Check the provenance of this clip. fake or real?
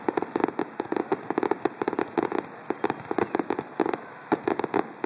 fake